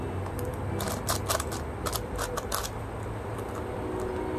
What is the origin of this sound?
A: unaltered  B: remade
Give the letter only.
A